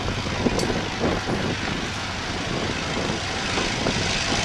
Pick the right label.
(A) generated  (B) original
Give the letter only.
B